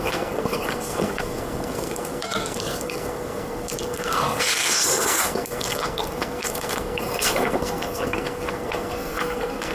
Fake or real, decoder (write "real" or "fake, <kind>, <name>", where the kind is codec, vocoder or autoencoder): fake, codec, SNAC